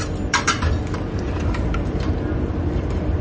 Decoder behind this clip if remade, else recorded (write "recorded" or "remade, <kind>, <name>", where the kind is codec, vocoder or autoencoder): remade, vocoder, BigVGAN v2